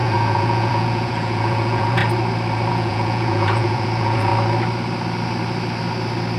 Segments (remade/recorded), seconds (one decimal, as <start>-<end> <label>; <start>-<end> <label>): 0.0-2.0 remade; 2.0-2.7 recorded; 2.7-4.3 remade; 4.3-6.4 recorded